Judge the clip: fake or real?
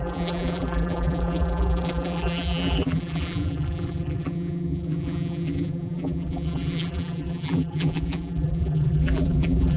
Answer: fake